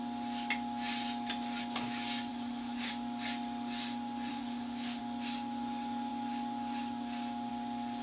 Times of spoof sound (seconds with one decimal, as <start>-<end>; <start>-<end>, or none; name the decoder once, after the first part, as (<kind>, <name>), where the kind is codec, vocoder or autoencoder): 2.3-2.9 (autoencoder, DAC-VAE); 4.3-5.0